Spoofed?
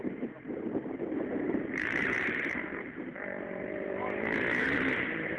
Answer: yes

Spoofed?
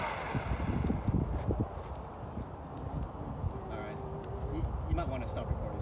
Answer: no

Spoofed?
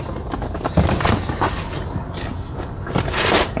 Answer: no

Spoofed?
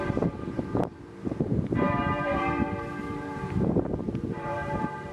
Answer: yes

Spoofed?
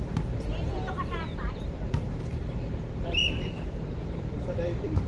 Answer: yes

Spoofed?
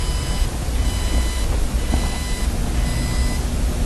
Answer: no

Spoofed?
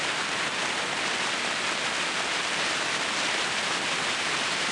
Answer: yes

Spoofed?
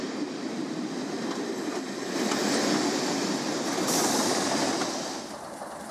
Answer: no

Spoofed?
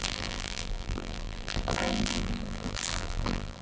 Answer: yes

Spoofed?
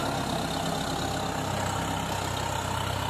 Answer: no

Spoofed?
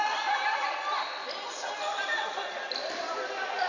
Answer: no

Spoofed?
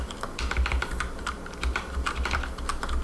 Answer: no